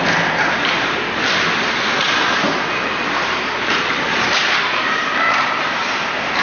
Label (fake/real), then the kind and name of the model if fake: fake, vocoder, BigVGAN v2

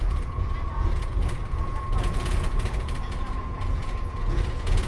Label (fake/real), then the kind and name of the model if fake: fake, vocoder, Vocos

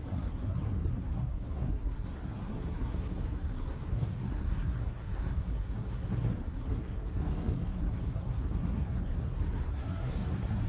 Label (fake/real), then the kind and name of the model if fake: fake, codec, SNAC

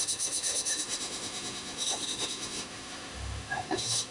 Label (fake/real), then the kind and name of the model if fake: fake, autoencoder, DAC-VAE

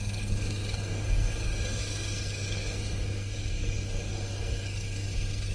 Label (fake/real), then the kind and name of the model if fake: fake, codec, SNAC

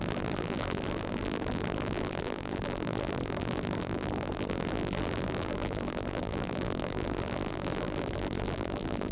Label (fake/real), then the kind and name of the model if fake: fake, vocoder, BigVGAN v2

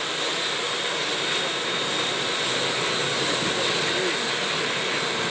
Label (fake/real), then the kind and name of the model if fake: real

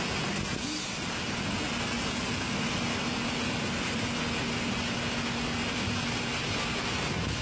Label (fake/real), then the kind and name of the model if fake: real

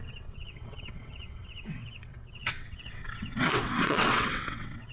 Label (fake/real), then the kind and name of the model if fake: fake, vocoder, WaveNeXt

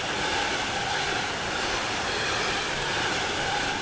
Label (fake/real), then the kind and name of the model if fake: real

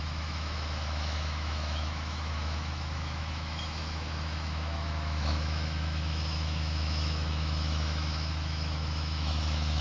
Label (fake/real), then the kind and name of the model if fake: fake, autoencoder, DAC-VAE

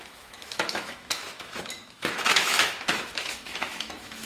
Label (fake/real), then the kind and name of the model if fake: fake, autoencoder, DAC-VAE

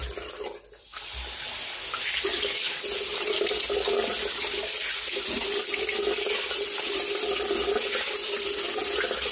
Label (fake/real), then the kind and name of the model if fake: real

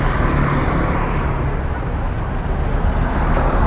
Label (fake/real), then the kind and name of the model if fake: real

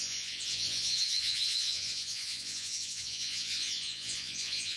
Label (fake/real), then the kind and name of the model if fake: fake, vocoder, Vocos